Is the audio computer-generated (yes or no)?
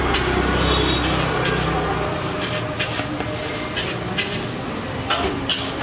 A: no